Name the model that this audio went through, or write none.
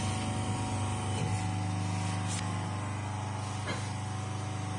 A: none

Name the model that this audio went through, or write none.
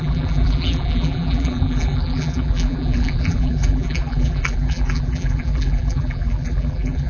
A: vocoder, BigVGAN v2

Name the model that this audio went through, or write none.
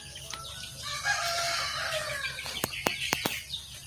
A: vocoder, BigVGAN v2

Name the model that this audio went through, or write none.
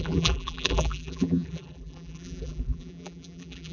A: vocoder, BigVGAN v2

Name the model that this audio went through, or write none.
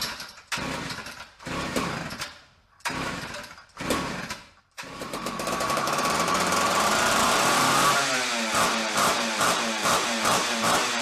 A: vocoder, BigVGAN v2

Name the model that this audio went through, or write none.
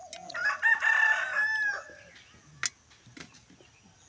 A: none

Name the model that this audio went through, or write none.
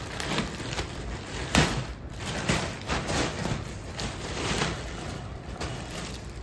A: vocoder, BigVGAN v2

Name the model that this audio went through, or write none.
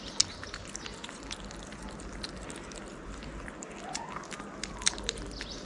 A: none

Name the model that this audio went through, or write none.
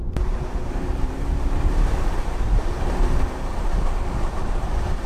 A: vocoder, BigVGAN v2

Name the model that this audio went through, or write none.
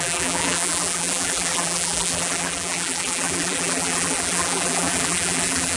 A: vocoder, BigVGAN v2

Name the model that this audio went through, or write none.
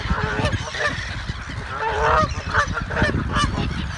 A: vocoder, BigVGAN v2